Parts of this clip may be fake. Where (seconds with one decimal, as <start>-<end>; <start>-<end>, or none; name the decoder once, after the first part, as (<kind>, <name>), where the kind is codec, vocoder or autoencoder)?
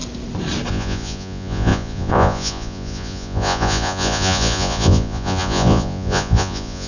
0.7-6.9 (vocoder, Vocos)